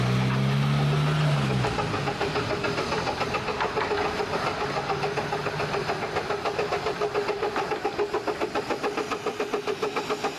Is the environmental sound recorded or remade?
recorded